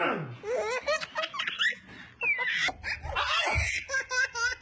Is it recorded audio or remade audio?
recorded